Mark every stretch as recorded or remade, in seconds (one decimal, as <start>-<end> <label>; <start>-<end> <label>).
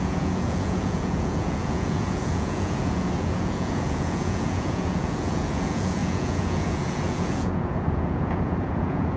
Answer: 0.0-9.2 remade